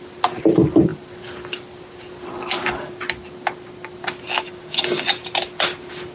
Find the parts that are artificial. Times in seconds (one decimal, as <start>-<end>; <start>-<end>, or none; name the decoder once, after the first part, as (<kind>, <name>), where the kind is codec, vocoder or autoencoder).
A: none